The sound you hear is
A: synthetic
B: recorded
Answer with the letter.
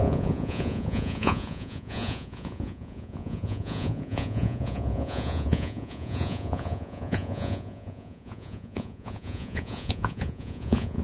A